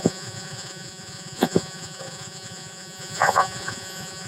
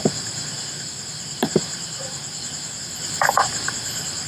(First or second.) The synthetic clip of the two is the first